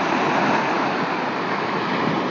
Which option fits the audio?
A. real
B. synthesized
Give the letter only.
A